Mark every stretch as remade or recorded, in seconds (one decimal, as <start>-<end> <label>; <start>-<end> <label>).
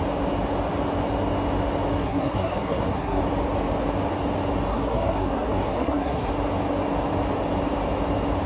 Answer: 0.0-2.0 recorded; 2.0-3.2 remade; 3.2-4.7 recorded; 4.7-6.3 remade; 6.3-8.5 recorded